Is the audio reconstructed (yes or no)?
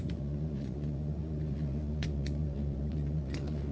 yes